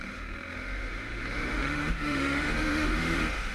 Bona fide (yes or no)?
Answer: no